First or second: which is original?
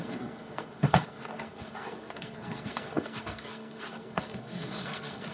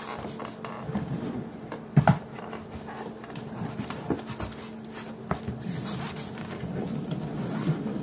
second